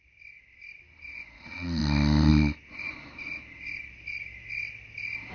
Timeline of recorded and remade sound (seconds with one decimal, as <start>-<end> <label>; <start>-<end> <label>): 0.0-1.2 recorded; 1.2-1.8 remade; 1.8-5.3 recorded